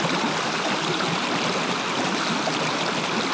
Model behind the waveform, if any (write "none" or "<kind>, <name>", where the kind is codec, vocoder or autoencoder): none